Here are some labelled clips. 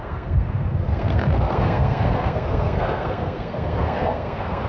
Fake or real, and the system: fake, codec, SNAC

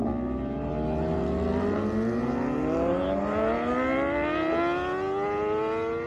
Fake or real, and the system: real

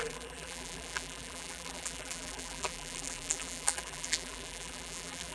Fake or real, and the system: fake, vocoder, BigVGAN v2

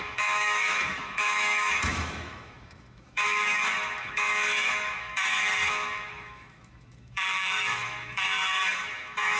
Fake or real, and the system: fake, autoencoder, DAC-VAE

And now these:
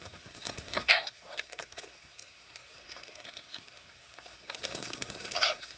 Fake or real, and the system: fake, codec, SNAC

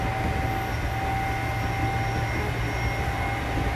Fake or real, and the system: real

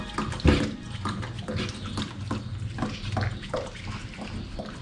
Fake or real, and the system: real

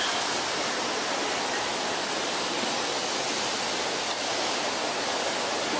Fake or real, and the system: real